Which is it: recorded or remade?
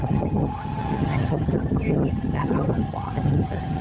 remade